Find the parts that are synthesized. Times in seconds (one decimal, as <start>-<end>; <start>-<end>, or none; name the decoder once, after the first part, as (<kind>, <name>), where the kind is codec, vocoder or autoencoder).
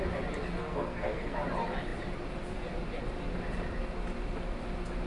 0.6-1.4 (codec, SNAC)